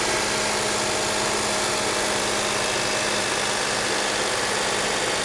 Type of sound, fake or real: real